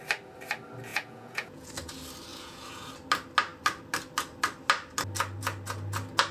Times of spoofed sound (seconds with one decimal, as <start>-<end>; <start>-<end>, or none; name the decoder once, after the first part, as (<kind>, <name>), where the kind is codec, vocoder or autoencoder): 0.9-1.7 (vocoder, Vocos); 2.3-2.9